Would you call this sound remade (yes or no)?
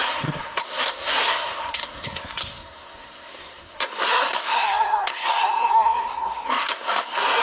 yes